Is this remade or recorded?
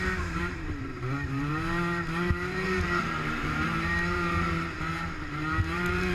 remade